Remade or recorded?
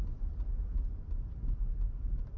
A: remade